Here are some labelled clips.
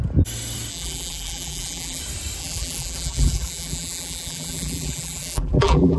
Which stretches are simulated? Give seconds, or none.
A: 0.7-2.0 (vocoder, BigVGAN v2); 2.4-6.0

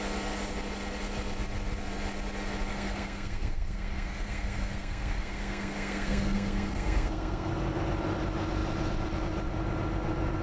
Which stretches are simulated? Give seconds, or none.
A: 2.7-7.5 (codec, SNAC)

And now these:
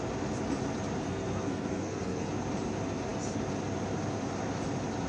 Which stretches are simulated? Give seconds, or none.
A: 1.1-2.3 (codec, SNAC)